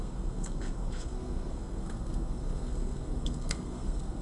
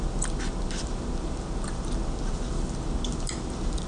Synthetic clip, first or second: first